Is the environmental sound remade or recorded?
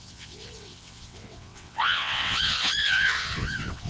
remade